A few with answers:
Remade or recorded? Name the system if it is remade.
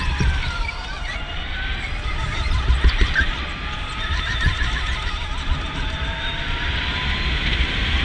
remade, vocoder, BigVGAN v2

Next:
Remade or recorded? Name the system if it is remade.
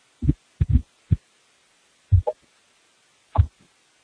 recorded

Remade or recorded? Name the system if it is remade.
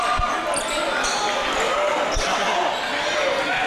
recorded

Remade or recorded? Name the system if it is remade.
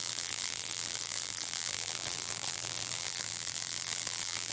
remade, vocoder, BigVGAN v2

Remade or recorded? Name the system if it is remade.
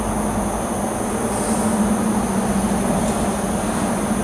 recorded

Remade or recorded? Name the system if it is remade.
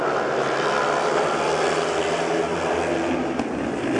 recorded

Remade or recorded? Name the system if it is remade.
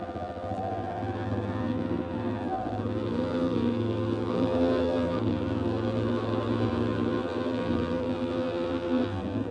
remade, vocoder, BigVGAN v2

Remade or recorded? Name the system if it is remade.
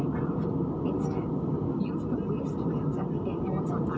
remade, vocoder, BigVGAN v2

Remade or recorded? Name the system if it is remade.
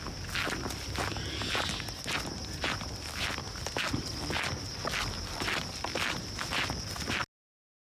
recorded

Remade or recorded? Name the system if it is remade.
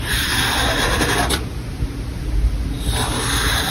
recorded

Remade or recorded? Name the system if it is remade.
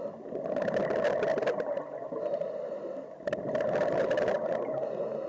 recorded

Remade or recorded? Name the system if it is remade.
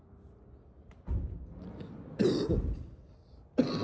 recorded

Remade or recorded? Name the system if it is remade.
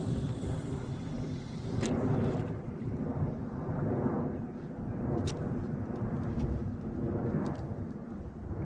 remade, vocoder, BigVGAN v2